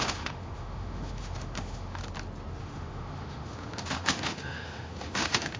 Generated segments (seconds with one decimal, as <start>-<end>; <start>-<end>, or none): 0.0-2.0; 2.6-5.6